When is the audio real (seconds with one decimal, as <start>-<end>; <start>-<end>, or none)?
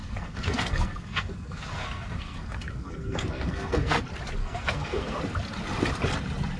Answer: 4.0-4.4; 5.2-6.6